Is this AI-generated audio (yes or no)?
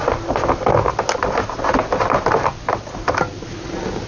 no